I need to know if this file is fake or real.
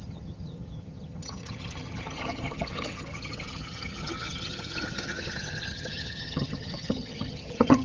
fake